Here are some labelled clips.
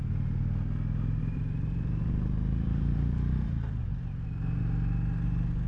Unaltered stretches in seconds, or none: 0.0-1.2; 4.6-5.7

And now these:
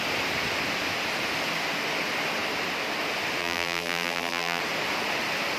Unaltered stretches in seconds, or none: 0.0-3.4; 4.6-5.6

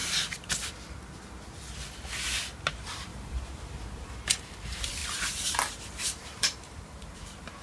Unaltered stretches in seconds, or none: 0.0-2.7

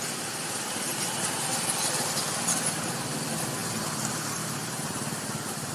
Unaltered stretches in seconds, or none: 0.0-5.7